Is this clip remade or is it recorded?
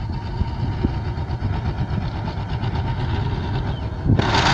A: recorded